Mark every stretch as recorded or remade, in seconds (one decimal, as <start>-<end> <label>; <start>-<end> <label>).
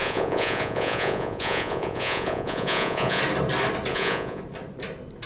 0.0-3.2 remade; 3.2-3.9 recorded; 3.9-4.4 remade; 4.4-5.3 recorded